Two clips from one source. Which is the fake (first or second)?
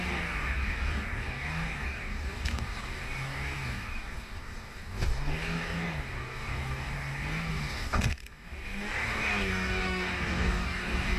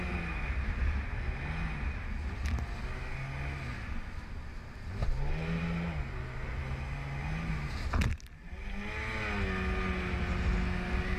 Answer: first